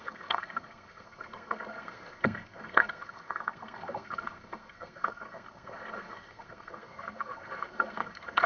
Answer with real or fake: fake